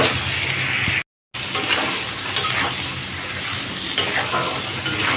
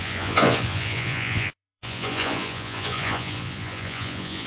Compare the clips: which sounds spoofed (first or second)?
second